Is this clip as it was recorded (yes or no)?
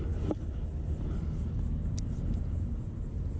yes